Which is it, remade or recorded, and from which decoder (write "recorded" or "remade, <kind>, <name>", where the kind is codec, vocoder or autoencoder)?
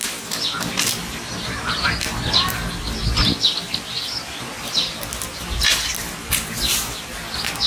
recorded